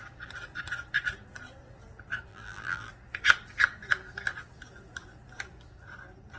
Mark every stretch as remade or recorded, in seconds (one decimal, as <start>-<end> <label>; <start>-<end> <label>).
0.0-2.3 recorded; 2.3-2.9 remade; 2.9-6.4 recorded